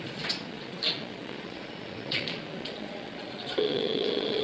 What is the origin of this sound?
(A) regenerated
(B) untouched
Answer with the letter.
A